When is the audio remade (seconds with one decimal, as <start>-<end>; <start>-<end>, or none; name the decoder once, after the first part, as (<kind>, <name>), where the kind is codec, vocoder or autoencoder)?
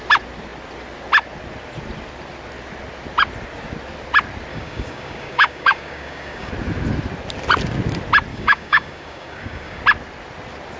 4.5-6.5 (codec, DAC); 8.3-9.8